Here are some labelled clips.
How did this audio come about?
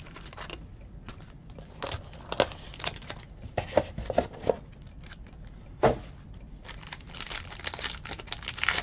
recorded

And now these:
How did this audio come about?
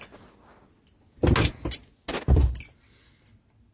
recorded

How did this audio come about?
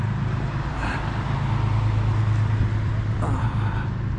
remade